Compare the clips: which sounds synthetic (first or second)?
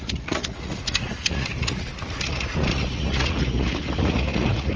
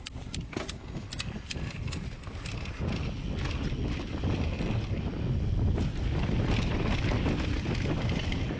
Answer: first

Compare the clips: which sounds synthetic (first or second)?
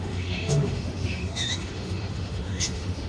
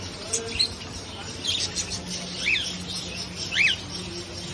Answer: first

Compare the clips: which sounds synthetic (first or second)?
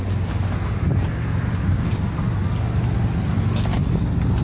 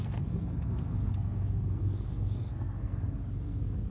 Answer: second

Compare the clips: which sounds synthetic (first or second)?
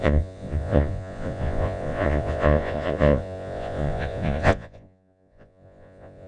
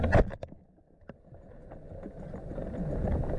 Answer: first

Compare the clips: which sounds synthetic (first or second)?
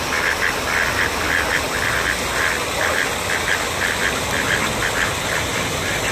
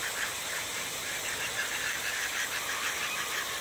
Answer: second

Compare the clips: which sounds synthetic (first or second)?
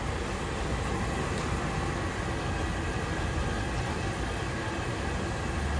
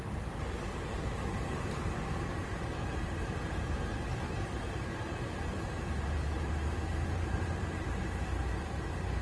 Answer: second